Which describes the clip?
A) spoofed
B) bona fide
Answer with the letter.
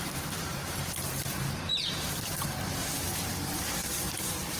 A